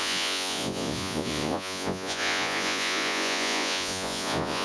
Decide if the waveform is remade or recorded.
remade